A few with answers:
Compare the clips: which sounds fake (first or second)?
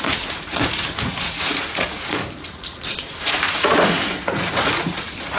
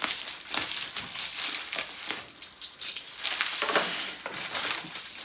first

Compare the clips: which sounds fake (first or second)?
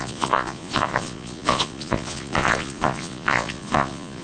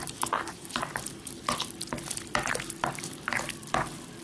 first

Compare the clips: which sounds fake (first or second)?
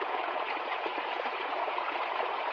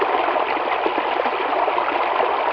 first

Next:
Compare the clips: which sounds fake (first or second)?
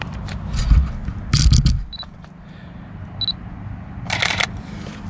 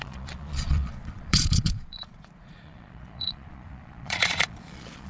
second